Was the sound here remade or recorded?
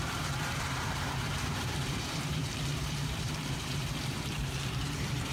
remade